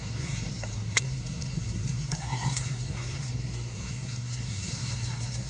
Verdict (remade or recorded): remade